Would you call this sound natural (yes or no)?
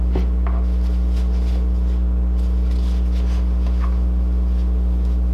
yes